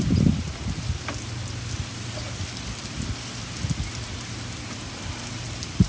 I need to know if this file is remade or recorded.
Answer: recorded